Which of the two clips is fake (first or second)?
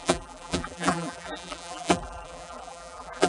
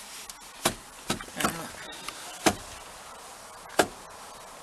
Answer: first